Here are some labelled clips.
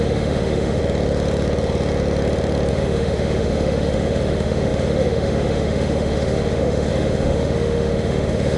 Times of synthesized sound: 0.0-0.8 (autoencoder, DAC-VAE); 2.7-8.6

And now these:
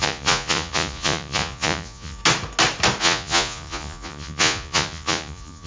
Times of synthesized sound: 0.0-2.2 (vocoder, Vocos); 3.0-5.7

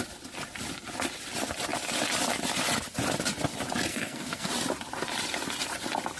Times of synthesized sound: 3.9-4.5 (codec, SNAC)

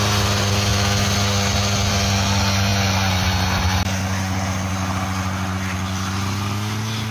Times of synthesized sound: none

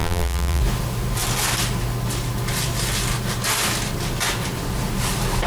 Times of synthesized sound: 0.0-0.6 (vocoder, BigVGAN v2)

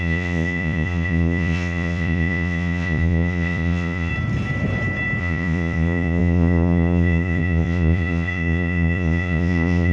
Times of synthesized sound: 0.0-4.1 (vocoder, Vocos); 5.2-9.9

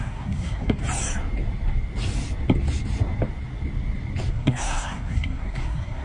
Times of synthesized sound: 0.0-0.8 (codec, SNAC); 4.3-6.0

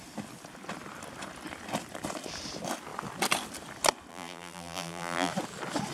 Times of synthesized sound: 4.1-5.3 (vocoder, BigVGAN v2)